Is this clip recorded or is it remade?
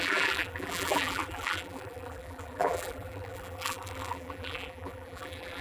remade